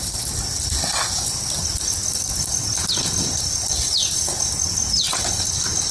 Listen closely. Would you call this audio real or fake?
real